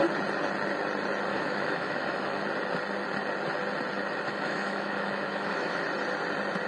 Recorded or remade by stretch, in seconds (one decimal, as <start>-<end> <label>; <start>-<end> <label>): 0.0-1.3 recorded; 1.3-2.4 remade; 2.4-4.3 recorded; 4.3-5.8 remade; 5.8-6.7 recorded